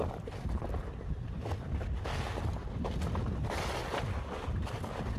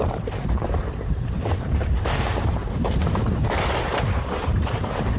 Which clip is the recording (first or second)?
first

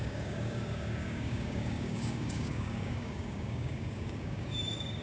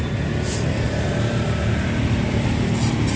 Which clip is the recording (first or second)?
second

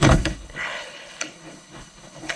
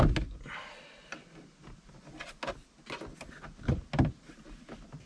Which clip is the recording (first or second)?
second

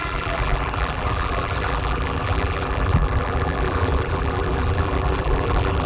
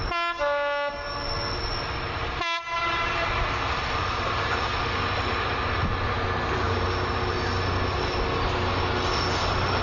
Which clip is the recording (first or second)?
second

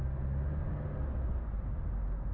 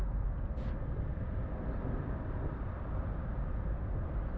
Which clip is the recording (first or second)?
first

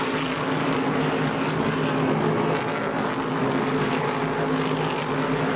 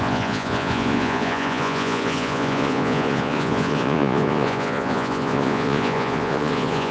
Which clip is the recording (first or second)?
first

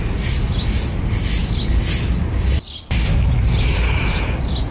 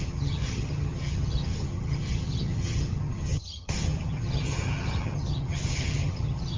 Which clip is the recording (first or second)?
first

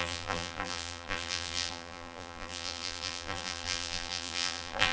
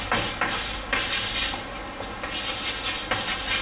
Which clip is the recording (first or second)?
second